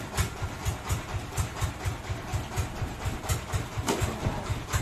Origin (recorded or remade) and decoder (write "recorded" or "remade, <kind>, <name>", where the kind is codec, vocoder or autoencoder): recorded